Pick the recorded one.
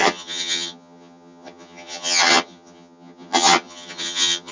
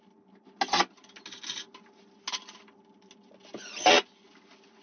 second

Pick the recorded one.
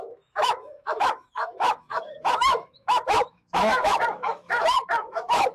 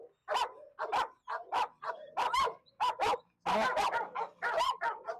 second